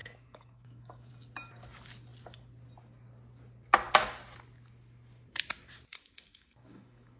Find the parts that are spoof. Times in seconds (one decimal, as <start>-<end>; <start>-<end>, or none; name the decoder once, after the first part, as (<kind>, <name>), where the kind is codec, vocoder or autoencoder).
0.0-1.1 (autoencoder, DAC-VAE); 5.9-7.2

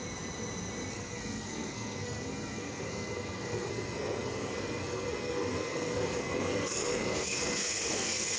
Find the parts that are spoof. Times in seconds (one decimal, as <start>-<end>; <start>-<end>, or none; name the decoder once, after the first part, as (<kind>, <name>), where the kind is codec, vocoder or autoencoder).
0.9-8.4 (codec, SNAC)

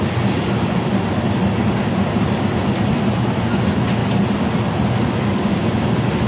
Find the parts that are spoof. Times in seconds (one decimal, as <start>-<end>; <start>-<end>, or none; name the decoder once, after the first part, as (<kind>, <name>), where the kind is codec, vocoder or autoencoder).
none

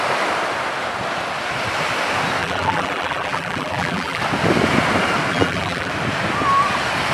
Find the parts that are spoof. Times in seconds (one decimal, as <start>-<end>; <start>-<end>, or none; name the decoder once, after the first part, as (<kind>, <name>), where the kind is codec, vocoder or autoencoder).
2.4-4.2 (vocoder, BigVGAN v2); 5.3-5.9

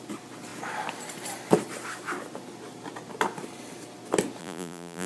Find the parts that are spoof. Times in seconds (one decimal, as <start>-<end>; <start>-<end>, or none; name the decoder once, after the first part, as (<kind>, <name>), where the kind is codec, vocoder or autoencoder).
4.4-5.1 (vocoder, BigVGAN v2)

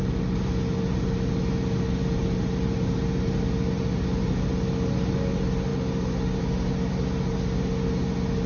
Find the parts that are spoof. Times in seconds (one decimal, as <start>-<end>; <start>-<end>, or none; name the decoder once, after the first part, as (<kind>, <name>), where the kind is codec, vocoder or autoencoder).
none

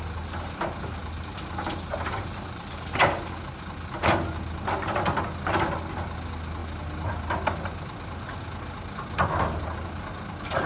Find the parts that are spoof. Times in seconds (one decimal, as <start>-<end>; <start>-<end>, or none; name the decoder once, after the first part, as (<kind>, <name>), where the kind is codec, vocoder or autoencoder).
none

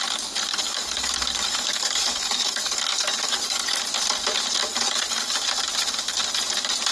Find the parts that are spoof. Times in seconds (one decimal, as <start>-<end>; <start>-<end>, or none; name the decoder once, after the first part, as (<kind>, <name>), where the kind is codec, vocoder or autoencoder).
0.5-3.8 (codec, DAC); 4.7-5.4